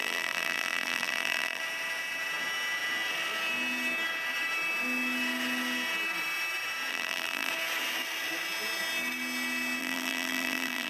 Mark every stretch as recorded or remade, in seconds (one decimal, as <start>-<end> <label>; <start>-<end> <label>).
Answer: 0.0-1.6 remade; 1.6-6.9 recorded; 6.9-7.5 remade; 7.5-9.8 recorded; 9.8-10.9 remade